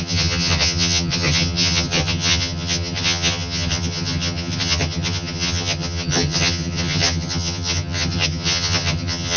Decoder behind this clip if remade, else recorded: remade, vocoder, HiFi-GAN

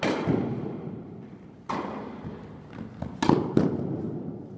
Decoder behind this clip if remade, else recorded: recorded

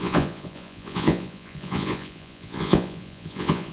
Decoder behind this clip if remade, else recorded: remade, vocoder, Vocos